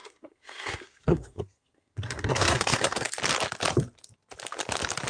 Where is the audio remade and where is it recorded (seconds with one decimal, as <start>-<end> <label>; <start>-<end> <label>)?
0.0-3.1 remade; 3.1-5.1 recorded